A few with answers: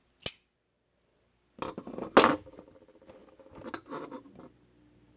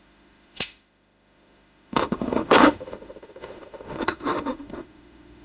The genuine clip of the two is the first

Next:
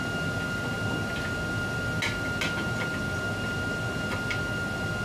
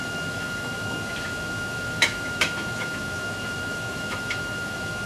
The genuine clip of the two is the first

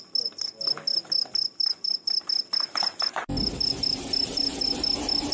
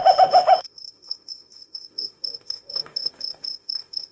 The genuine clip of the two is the first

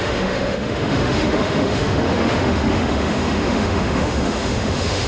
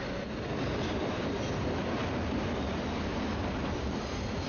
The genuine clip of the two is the second